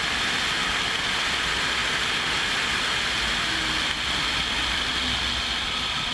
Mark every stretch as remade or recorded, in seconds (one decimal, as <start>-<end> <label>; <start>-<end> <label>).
0.0-6.1 recorded